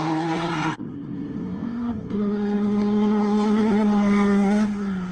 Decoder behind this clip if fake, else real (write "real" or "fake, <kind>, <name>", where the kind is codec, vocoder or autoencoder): fake, codec, SNAC